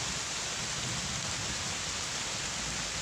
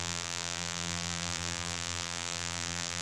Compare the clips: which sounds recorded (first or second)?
first